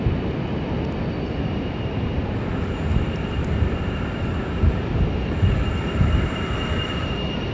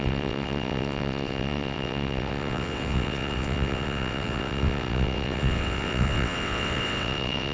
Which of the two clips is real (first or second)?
first